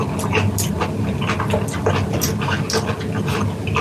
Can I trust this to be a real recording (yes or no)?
yes